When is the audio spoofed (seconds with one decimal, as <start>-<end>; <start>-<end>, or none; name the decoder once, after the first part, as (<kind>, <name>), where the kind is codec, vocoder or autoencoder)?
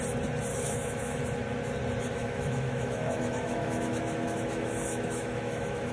0.5-1.2 (autoencoder, DAC-VAE); 2.1-5.9